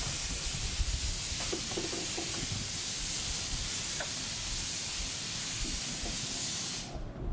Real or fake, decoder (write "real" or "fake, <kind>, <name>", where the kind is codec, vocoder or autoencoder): real